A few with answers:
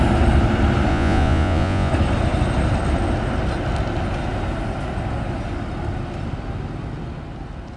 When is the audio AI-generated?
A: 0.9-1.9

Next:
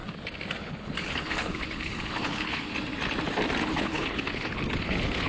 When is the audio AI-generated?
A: 0.6-2.7; 3.8-5.3

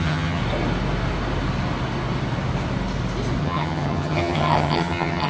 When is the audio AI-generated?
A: 0.0-0.4; 3.4-5.3